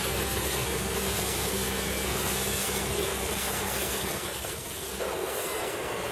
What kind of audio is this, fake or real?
fake